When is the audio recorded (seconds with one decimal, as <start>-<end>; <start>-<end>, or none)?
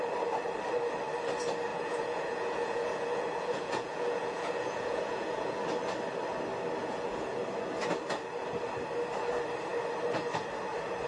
0.0-1.7; 5.6-6.8; 7.4-11.1